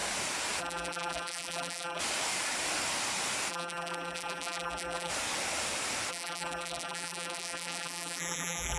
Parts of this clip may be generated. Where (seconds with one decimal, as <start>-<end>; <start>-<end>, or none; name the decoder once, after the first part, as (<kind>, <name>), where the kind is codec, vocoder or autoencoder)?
0.6-2.0 (vocoder, BigVGAN v2); 3.5-5.1; 6.1-8.8